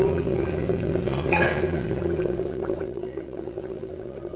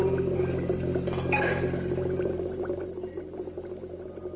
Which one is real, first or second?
second